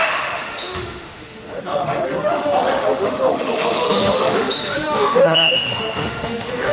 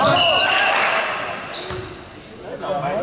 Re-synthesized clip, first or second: first